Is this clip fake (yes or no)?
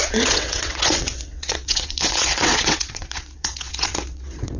yes